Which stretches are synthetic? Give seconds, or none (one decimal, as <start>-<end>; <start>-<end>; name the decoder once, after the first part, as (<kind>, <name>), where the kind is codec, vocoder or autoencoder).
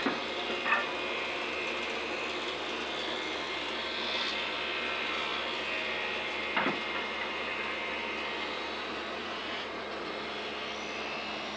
9.2-10.1 (vocoder, Vocos)